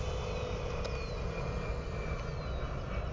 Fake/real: real